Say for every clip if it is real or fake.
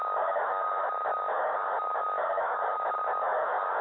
fake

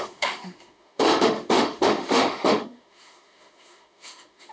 fake